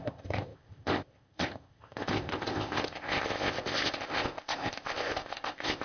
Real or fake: fake